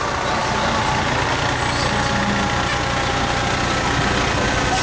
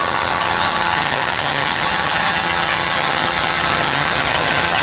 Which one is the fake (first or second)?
second